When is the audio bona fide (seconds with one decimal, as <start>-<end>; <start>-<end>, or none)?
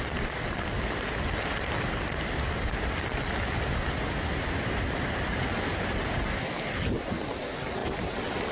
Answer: 0.0-7.8